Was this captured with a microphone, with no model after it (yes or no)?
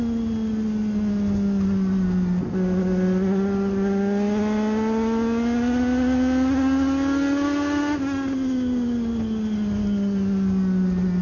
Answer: yes